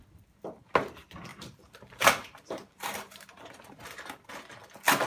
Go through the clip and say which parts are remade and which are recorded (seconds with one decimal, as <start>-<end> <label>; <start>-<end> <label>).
0.0-1.3 recorded; 1.3-4.4 remade; 4.4-5.1 recorded